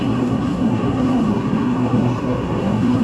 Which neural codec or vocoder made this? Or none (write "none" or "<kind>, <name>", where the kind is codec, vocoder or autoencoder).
codec, SNAC